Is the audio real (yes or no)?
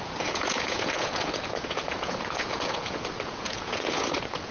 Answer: no